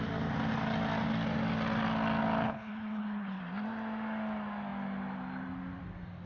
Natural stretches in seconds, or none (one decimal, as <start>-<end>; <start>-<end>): 0.0-2.4; 3.4-6.3